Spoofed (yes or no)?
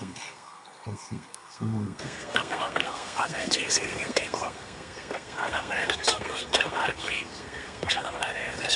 yes